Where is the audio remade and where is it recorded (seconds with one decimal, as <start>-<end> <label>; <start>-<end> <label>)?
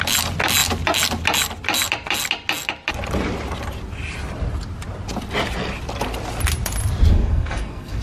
0.0-7.1 recorded; 7.1-8.0 remade